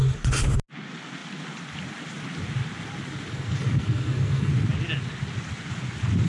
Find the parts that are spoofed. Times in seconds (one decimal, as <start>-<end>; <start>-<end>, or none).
3.3-4.5